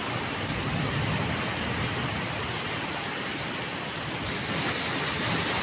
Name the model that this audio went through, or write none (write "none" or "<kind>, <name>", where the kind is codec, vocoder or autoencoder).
none